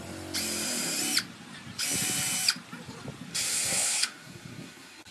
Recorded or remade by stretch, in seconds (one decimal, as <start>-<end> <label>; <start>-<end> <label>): 0.0-3.3 recorded; 3.3-5.1 remade